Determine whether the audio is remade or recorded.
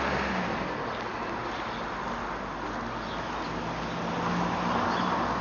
recorded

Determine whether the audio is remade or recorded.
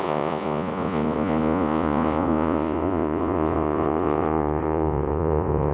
remade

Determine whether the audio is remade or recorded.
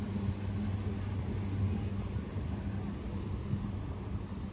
recorded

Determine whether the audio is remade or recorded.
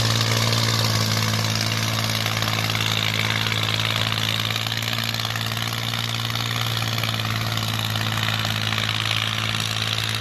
recorded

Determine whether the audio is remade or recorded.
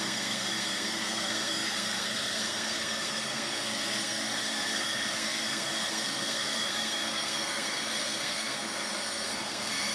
remade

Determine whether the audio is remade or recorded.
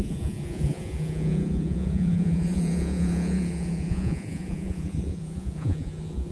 remade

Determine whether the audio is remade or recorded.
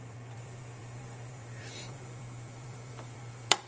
remade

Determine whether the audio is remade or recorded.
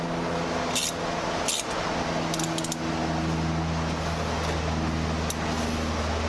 recorded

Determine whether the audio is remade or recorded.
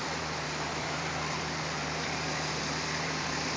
remade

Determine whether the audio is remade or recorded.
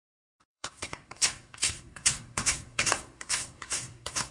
remade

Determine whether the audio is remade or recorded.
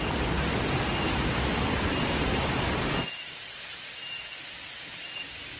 recorded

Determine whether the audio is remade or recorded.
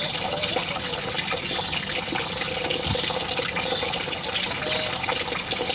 recorded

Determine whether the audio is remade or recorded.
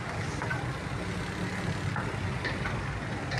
recorded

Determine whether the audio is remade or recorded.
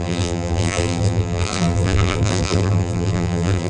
remade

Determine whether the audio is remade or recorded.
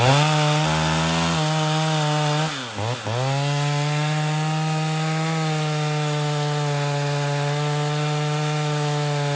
recorded